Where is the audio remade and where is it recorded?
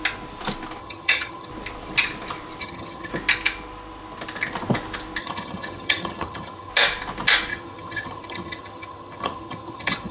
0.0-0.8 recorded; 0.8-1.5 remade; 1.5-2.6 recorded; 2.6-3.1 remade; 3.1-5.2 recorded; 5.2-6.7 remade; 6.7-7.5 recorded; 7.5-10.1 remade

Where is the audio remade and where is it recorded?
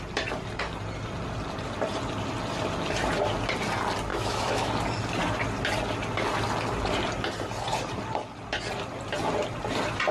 0.0-4.1 recorded; 4.1-4.7 remade; 4.7-10.1 recorded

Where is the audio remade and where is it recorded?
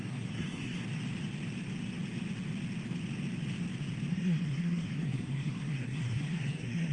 0.0-0.8 remade; 0.8-4.1 recorded; 4.1-6.9 remade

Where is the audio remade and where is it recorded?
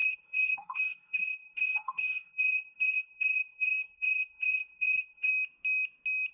0.0-5.3 remade; 5.3-6.3 recorded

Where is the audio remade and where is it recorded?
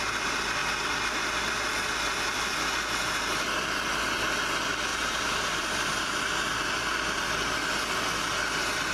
0.0-4.9 recorded; 4.9-6.2 remade; 6.2-8.9 recorded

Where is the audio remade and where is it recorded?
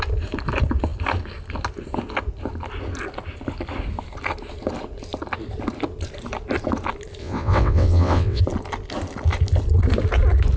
0.0-7.2 recorded; 7.2-8.4 remade; 8.4-10.6 recorded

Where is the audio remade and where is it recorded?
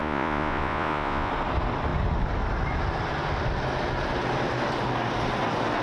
0.0-1.3 remade; 1.3-5.8 recorded